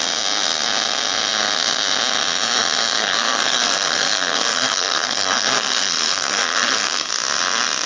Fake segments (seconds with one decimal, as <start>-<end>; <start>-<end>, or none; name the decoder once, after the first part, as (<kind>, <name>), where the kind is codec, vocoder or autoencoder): 3.0-7.1 (codec, SNAC)